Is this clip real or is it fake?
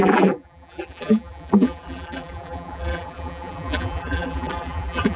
fake